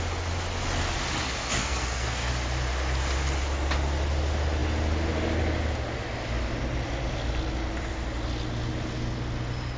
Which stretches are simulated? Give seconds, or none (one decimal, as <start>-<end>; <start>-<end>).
1.6-2.3